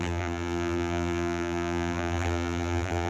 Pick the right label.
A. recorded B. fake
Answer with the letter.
B